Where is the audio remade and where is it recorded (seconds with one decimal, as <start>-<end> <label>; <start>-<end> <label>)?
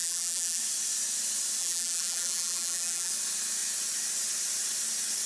0.0-0.6 remade; 0.6-1.6 recorded; 1.6-3.1 remade; 3.1-5.3 recorded